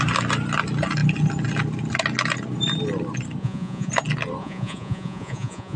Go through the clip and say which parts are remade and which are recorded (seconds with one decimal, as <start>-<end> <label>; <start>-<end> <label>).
0.0-3.4 recorded; 3.4-3.9 remade; 3.9-4.4 recorded; 4.4-5.8 remade